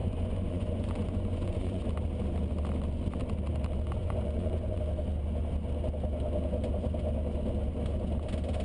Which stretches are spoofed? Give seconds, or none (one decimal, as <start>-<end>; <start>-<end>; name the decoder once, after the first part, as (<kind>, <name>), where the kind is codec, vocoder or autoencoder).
0.0-1.8 (vocoder, Vocos); 4.0-4.8